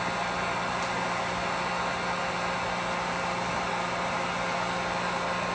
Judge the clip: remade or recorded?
recorded